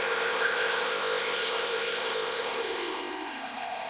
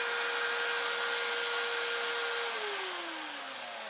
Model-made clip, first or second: first